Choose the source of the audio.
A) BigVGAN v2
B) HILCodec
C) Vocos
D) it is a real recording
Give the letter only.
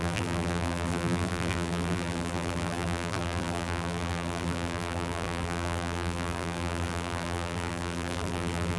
A